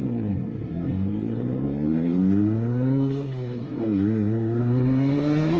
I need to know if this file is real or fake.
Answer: fake